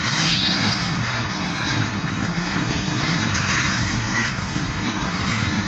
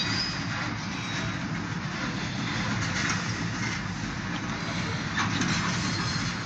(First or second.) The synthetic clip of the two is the first